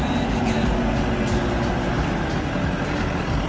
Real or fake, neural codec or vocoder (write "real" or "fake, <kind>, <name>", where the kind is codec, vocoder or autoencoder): real